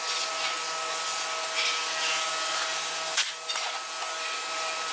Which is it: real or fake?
real